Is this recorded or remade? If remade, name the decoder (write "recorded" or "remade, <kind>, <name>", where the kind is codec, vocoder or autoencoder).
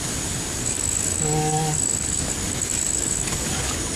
remade, codec, DAC